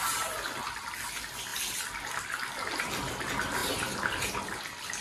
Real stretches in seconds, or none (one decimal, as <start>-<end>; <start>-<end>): 0.0-1.5; 2.1-5.0